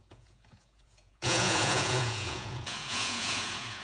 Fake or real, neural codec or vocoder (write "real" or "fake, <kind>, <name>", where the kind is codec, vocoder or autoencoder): fake, vocoder, Vocos